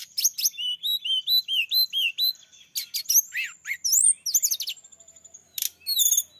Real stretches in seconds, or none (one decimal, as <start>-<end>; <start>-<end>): 0.0-6.4